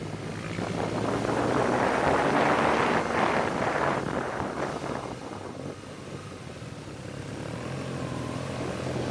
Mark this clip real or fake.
real